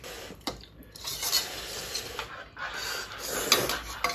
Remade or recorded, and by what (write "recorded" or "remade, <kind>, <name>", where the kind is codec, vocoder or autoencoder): recorded